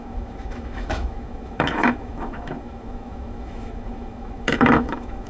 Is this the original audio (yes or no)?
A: no